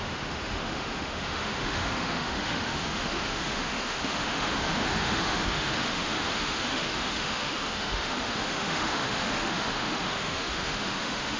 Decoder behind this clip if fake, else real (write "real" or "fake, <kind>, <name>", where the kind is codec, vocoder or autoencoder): fake, autoencoder, DAC-VAE